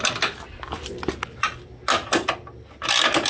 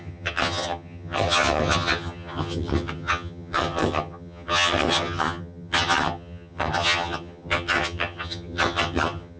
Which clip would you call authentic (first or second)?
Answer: first